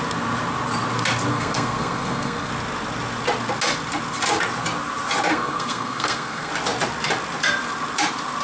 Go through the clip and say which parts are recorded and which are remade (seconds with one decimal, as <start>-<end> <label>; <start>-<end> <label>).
0.0-1.3 recorded; 1.3-2.5 remade; 2.5-5.3 recorded; 5.3-6.5 remade; 6.5-8.4 recorded